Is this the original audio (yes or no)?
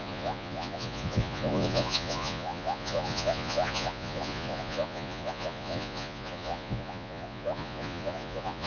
no